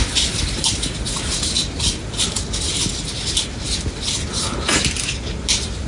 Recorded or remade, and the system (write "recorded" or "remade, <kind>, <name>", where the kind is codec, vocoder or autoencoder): recorded